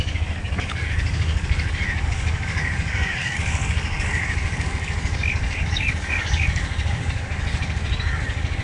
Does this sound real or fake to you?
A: fake